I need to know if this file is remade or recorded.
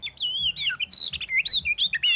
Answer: recorded